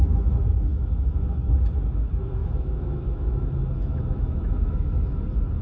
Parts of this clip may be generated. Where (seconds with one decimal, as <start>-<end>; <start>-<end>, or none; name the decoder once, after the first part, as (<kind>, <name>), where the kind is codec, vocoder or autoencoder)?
0.7-1.5 (autoencoder, DAC-VAE); 2.4-5.0